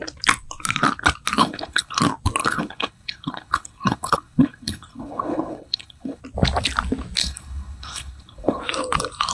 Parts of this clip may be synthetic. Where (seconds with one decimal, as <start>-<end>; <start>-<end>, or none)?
1.4-2.0; 2.4-6.2; 7.2-8.6